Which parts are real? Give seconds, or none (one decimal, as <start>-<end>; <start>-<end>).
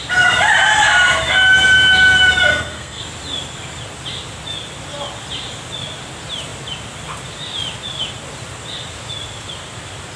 0.0-2.5; 3.0-10.2